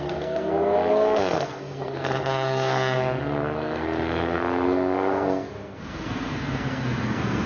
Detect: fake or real fake